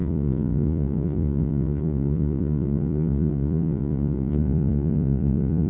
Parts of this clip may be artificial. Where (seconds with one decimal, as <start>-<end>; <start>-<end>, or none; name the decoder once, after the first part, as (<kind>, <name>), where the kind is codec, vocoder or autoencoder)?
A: 0.0-5.7 (vocoder, Vocos)